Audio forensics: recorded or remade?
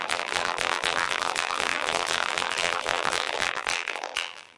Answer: remade